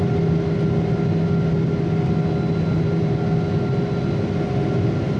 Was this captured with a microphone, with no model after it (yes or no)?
yes